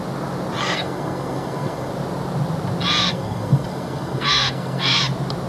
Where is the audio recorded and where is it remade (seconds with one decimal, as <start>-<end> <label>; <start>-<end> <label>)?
0.0-0.6 recorded; 0.6-1.9 remade; 1.9-3.0 recorded; 3.0-5.0 remade; 5.0-5.5 recorded